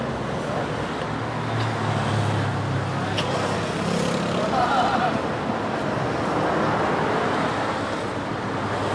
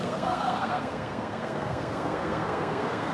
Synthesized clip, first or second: second